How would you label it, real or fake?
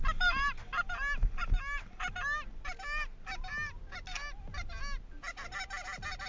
real